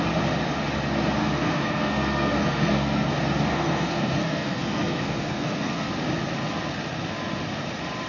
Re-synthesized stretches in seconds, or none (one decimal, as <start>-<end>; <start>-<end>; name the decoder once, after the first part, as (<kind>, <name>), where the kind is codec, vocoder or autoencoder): 1.2-3.1 (codec, SNAC); 3.5-5.9